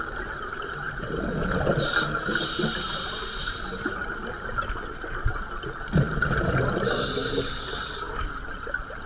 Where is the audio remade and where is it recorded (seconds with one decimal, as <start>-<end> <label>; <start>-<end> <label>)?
0.0-0.5 recorded; 0.5-1.1 remade; 1.1-9.1 recorded